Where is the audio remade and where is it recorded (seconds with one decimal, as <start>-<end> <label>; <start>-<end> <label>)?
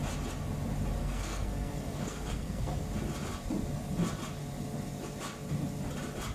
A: 0.0-1.0 recorded; 1.0-2.8 remade; 2.8-6.3 recorded